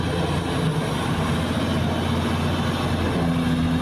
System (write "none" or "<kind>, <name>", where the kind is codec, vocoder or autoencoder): none